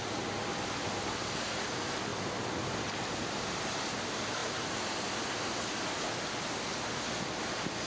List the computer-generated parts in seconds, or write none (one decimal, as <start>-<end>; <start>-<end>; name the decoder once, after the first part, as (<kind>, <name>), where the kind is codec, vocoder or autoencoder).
none